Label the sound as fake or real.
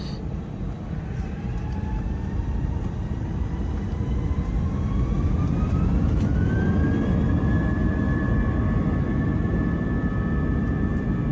fake